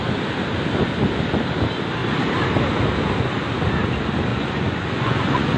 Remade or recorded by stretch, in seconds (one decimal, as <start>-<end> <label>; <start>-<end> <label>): 0.0-4.3 recorded; 4.3-5.6 remade